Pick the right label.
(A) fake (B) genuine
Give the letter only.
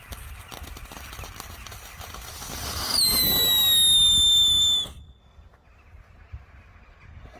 B